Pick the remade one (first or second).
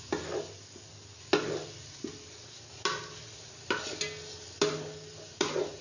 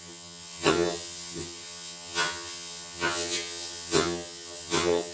second